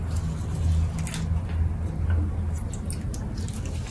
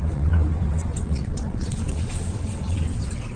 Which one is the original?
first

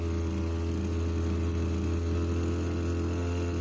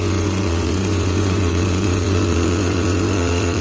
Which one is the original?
first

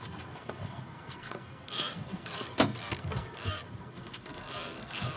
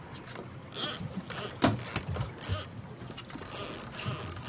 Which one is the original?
second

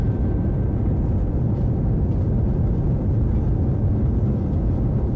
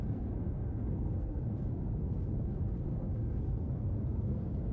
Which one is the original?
first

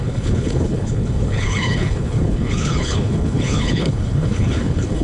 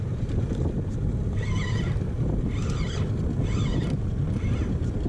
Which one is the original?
second